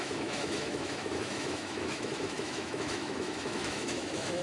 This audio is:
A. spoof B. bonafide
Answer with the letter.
A